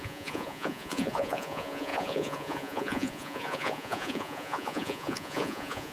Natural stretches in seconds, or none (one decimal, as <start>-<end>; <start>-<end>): none